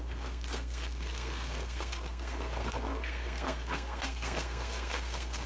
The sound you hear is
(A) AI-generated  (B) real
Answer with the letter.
A